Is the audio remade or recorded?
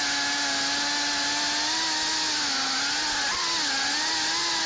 recorded